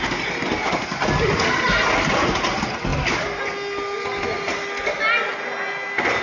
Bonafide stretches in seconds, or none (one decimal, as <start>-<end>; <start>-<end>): 0.0-6.2